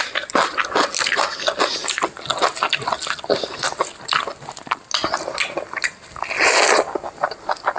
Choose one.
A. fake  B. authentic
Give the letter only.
B